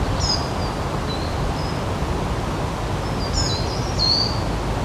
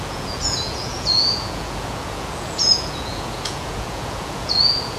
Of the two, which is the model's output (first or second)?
second